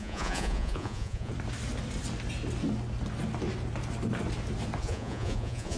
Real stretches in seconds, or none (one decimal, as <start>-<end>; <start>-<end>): 1.3-4.8